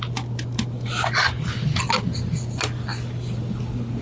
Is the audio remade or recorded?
recorded